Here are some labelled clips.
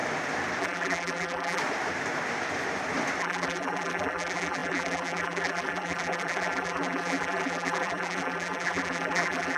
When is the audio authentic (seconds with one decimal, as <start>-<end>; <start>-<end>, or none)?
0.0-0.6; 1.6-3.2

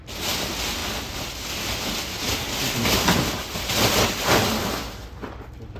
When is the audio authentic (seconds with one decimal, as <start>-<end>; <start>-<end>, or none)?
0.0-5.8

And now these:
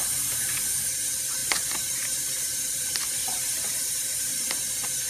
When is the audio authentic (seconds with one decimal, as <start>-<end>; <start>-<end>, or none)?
0.0-1.4; 4.5-5.1

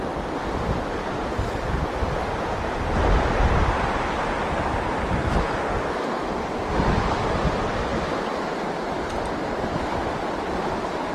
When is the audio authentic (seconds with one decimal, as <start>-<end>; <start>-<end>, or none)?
0.0-11.1

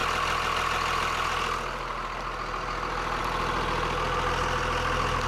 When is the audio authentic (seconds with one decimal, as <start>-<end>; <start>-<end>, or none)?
0.0-5.3

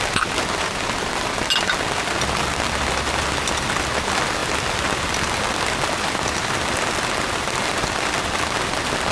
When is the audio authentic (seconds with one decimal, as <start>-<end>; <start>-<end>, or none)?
0.0-9.1